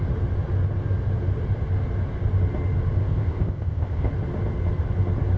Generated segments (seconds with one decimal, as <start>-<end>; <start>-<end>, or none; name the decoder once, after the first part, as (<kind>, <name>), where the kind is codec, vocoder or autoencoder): 3.0-4.1 (codec, ZipCodec)